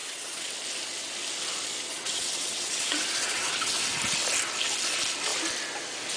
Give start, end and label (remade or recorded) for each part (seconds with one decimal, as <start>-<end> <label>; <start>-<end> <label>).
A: 0.0-0.5 remade; 0.5-1.9 recorded; 1.9-4.0 remade; 4.0-6.2 recorded